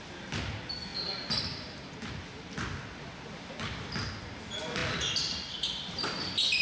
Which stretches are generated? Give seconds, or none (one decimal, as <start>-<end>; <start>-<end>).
none